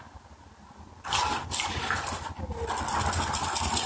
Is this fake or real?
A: real